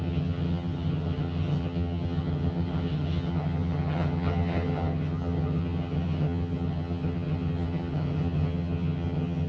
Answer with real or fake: fake